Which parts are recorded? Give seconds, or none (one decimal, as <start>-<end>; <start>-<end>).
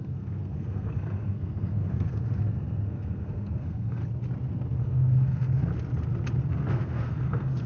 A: 4.0-4.8; 5.7-6.5